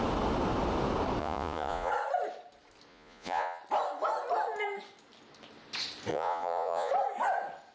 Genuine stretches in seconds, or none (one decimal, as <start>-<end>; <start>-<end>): 0.0-1.2; 1.9-2.9; 3.6-6.1; 6.9-7.7

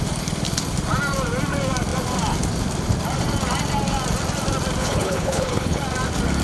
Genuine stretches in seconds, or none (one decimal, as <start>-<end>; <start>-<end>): 0.0-4.8; 5.8-6.4

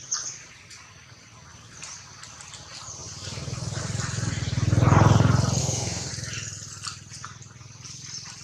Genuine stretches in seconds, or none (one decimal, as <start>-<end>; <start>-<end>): 0.0-5.6; 6.1-8.4

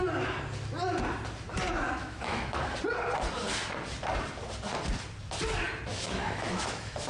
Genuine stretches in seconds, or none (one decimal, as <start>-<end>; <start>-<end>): 0.0-2.0; 2.6-5.9